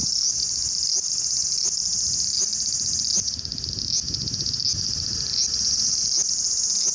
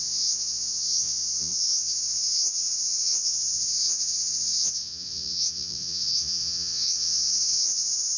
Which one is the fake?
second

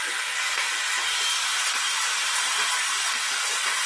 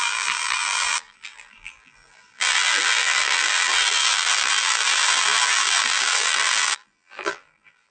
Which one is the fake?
second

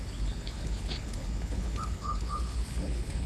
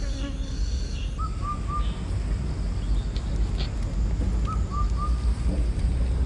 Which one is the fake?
first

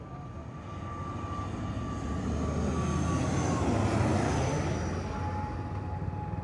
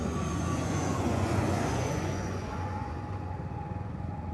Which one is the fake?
second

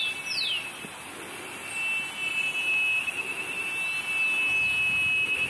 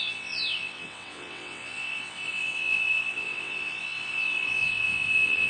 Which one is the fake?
second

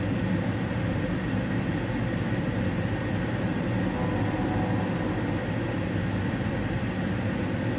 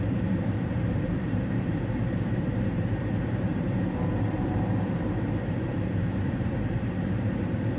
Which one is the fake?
second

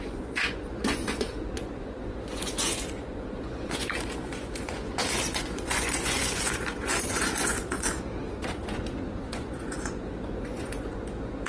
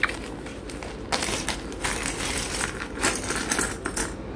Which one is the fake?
first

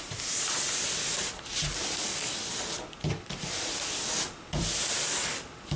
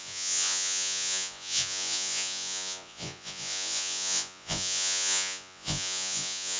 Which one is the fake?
second